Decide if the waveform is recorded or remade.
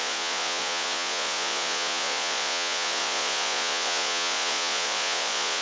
remade